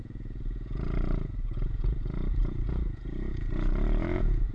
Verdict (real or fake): fake